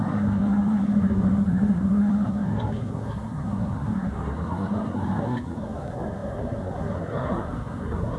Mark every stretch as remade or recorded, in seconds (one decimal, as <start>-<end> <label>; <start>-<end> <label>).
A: 0.0-8.2 remade